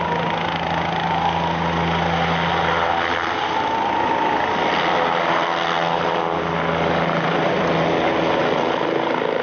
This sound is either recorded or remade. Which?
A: recorded